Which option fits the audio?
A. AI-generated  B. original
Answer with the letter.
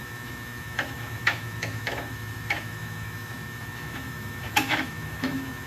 A